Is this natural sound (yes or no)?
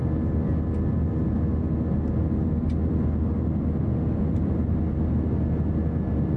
yes